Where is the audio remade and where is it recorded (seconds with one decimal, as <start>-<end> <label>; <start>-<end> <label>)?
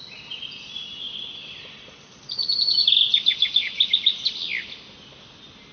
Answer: 0.0-5.7 recorded